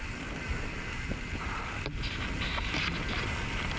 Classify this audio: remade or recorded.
recorded